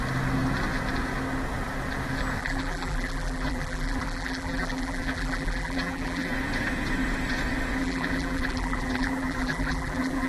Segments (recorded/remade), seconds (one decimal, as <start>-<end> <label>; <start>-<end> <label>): 0.0-2.4 recorded; 2.4-6.3 remade; 6.3-7.8 recorded; 7.8-10.3 remade